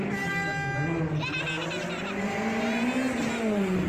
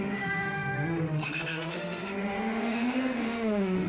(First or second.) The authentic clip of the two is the first